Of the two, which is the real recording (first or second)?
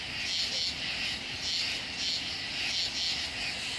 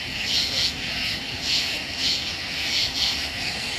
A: first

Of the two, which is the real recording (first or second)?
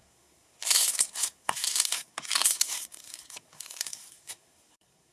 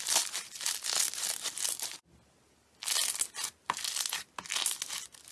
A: second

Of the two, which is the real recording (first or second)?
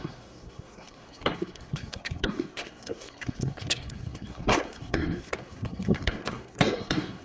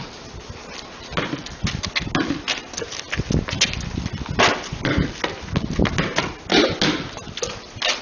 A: second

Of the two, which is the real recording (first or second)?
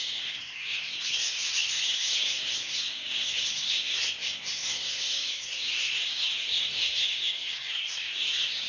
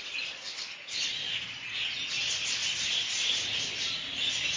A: second